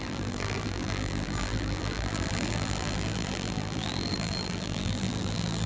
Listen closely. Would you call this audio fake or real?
fake